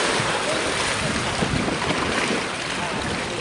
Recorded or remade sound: recorded